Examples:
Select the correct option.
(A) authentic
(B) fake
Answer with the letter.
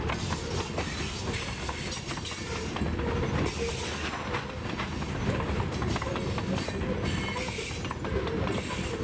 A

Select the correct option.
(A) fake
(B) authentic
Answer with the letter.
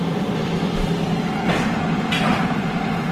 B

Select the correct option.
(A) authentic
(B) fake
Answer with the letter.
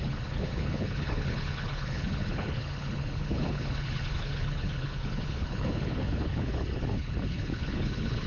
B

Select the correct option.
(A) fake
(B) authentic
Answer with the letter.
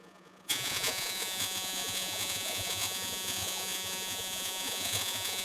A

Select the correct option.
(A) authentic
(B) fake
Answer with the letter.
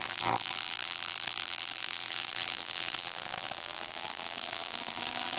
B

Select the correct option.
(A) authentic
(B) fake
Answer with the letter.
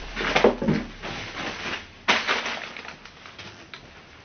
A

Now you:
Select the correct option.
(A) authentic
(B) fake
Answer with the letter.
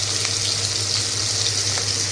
A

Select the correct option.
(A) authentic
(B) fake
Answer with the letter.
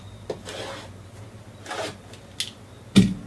A